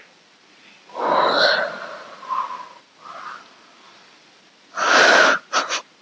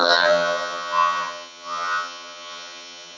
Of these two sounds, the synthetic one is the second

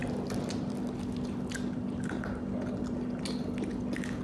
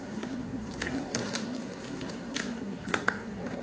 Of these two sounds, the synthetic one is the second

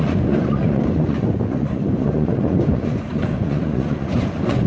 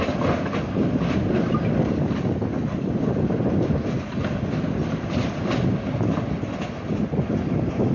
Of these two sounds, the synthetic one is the first